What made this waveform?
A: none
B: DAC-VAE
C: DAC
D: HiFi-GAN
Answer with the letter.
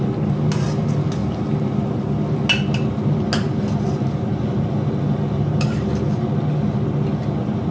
A